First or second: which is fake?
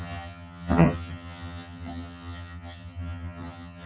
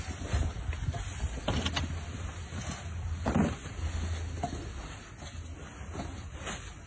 first